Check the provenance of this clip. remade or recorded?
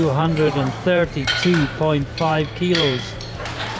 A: remade